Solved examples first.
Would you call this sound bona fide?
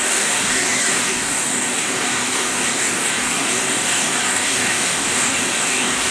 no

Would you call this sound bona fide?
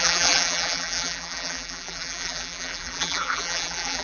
no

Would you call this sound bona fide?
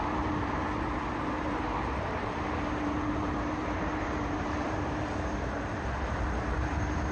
no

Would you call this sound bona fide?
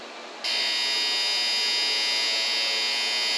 yes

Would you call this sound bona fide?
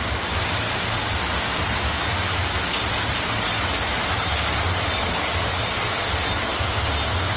yes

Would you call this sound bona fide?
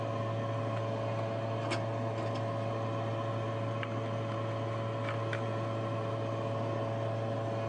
yes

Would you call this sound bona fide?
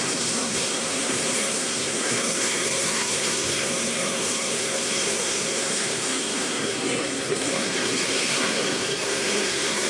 no